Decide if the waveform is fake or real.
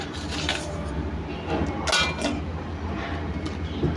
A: real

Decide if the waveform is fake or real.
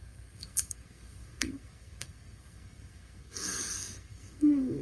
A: fake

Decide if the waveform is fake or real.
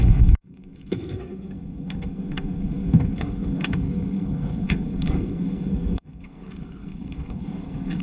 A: fake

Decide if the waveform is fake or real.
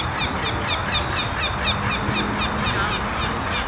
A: real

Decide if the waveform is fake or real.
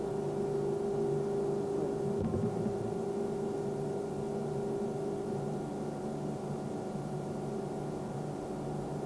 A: real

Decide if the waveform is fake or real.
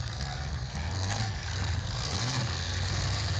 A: fake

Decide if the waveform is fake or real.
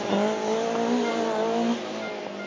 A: real